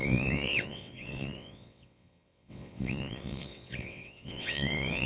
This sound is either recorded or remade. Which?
remade